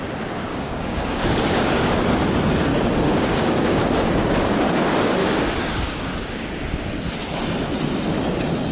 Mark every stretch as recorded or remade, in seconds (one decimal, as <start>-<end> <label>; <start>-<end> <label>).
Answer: 0.0-0.5 recorded; 0.5-1.9 remade; 1.9-2.7 recorded; 2.7-3.8 remade; 3.8-5.2 recorded; 5.2-6.6 remade; 6.6-8.7 recorded